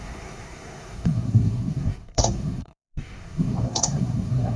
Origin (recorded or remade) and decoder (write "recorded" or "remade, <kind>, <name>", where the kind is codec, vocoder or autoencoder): remade, codec, SNAC